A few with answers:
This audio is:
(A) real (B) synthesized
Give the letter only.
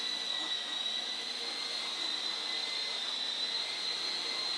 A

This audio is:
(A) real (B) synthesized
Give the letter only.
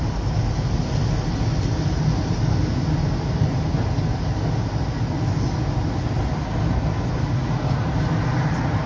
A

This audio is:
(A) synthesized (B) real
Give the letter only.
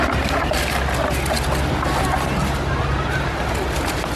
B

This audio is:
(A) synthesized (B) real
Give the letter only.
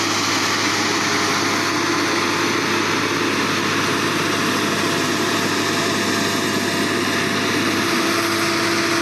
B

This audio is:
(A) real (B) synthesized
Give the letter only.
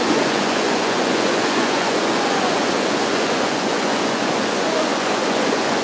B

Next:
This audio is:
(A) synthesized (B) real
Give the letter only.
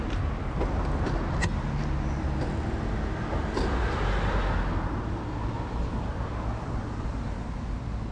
B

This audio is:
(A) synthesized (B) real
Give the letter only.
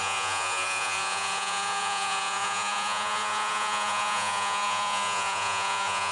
A